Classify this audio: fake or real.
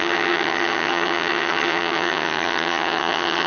fake